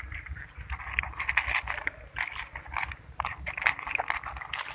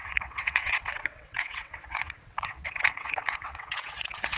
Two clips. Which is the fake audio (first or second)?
second